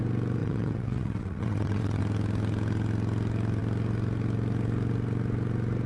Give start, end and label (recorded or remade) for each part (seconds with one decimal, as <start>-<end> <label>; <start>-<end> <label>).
0.0-0.4 recorded; 0.4-2.0 remade; 2.0-5.9 recorded